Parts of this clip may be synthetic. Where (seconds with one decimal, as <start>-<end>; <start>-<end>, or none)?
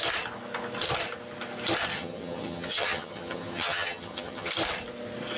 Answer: 1.9-4.5